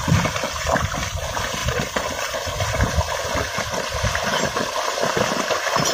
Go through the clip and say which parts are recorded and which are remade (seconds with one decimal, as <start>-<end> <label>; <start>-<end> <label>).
0.0-5.9 recorded